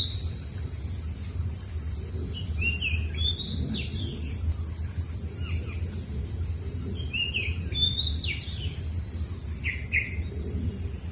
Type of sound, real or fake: real